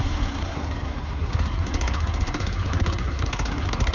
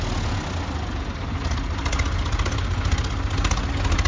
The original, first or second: second